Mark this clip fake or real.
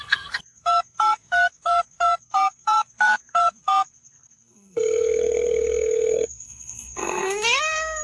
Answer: fake